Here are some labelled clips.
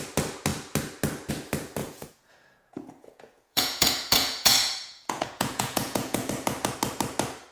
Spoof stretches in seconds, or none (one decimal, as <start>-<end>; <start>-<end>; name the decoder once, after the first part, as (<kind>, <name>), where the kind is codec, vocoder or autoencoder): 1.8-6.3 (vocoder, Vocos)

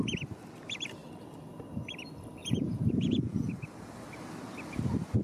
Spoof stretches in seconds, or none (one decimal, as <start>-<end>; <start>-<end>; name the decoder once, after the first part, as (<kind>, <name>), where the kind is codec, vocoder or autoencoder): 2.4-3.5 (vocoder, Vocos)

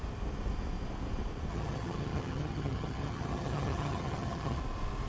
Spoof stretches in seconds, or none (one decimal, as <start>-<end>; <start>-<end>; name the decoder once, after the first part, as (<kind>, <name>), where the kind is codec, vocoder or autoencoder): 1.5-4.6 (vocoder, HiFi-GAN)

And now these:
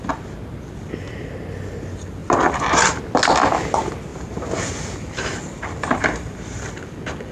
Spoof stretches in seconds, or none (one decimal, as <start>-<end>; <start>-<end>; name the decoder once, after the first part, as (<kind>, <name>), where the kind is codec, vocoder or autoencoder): 2.2-3.0 (vocoder, BigVGAN v2); 4.1-7.3

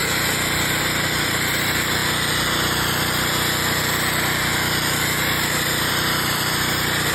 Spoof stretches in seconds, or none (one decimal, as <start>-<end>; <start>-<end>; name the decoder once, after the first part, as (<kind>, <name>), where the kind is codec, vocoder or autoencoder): 0.8-2.0 (vocoder, BigVGAN v2); 5.8-7.1